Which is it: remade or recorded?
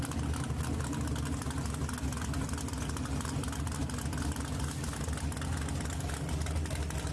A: recorded